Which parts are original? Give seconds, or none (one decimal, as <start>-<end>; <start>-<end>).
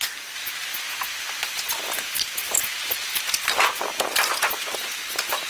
0.0-5.5